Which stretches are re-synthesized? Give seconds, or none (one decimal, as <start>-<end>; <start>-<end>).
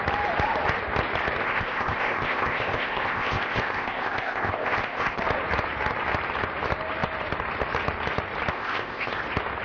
1.4-5.2; 8.5-9.2